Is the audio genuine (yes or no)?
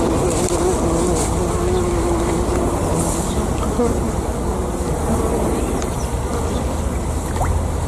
yes